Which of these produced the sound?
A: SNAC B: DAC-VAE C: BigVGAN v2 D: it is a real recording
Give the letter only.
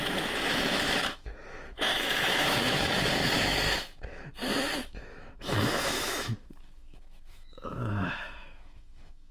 B